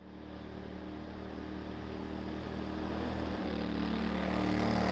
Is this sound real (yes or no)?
yes